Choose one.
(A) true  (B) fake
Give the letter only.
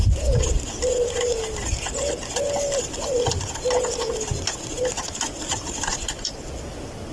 A